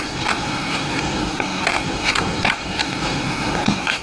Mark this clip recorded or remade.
remade